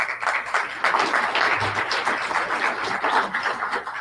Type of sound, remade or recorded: recorded